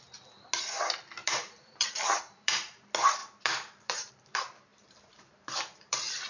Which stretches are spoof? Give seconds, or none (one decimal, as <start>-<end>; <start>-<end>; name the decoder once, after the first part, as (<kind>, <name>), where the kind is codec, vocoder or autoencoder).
1.2-2.5 (vocoder, BigVGAN v2); 3.2-4.1; 4.7-6.3